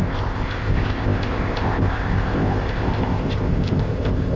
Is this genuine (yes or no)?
no